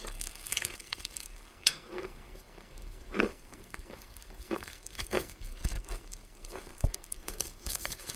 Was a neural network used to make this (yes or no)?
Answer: yes